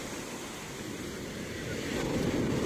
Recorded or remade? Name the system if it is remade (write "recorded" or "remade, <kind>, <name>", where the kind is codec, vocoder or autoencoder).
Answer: remade, vocoder, BigVGAN v2